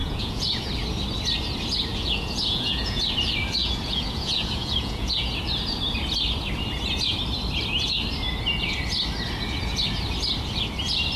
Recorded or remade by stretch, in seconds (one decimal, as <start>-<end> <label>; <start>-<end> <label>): 0.0-0.7 remade; 0.7-1.9 recorded; 1.9-3.0 remade; 3.0-3.6 recorded; 3.6-5.4 remade; 5.4-11.2 recorded